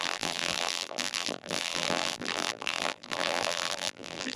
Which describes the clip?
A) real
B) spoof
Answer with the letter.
B